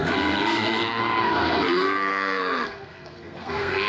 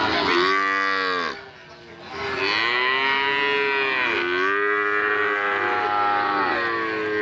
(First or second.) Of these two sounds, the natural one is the second